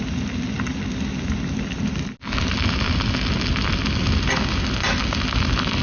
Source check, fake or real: real